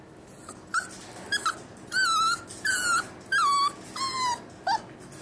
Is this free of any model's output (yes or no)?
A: yes